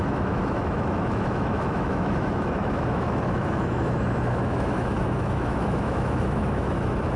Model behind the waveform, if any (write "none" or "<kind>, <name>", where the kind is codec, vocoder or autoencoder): autoencoder, DAC-VAE